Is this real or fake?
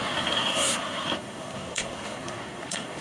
fake